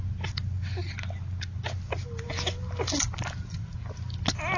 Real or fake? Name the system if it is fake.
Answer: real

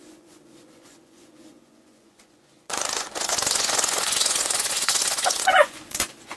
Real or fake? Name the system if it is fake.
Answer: fake, vocoder, Vocos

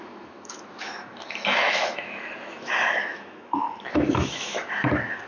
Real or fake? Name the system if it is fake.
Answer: fake, autoencoder, DAC-VAE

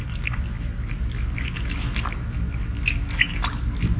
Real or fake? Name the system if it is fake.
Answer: real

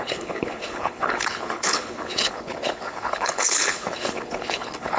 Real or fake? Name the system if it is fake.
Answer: fake, codec, HILCodec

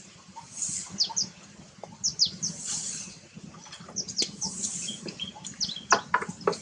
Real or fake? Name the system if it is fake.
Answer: real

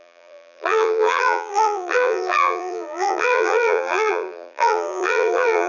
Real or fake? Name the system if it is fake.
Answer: fake, vocoder, BigVGAN v2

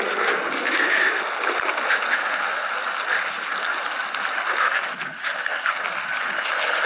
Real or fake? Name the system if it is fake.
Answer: real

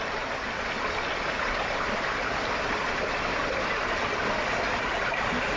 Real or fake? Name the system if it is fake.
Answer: real